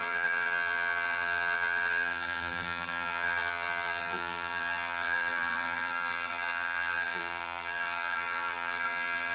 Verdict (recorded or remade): remade